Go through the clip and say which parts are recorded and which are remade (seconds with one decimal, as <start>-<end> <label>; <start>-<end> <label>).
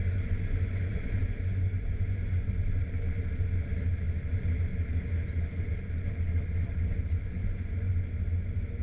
0.0-2.8 remade; 2.8-7.4 recorded; 7.4-7.9 remade; 7.9-8.8 recorded